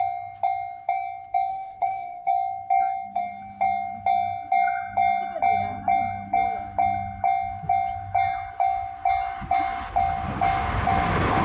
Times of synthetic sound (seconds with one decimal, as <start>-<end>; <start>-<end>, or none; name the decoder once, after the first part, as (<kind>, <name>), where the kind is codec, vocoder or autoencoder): 1.5-2.3 (codec, SNAC)